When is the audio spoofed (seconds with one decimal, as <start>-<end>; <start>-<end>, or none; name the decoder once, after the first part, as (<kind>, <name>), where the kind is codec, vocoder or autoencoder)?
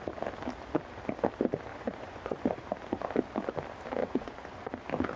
1.7-2.4 (vocoder, Vocos); 4.0-4.7